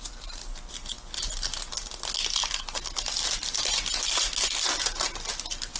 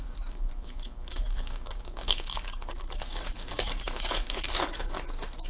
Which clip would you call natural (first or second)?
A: first